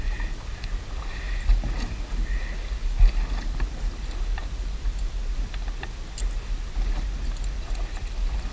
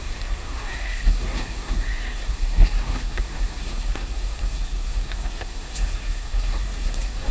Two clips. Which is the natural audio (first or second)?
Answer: first